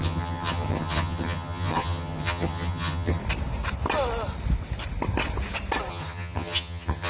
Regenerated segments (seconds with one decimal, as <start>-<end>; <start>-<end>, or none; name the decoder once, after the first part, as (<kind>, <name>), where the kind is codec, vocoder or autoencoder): 0.0-3.2 (vocoder, HiFi-GAN); 5.9-7.1